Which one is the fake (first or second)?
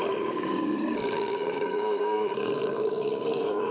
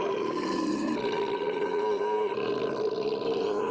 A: first